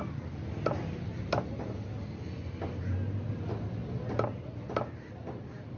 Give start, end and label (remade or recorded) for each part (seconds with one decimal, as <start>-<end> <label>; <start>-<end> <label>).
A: 0.0-5.8 recorded